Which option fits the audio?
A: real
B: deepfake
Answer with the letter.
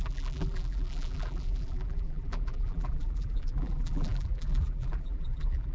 B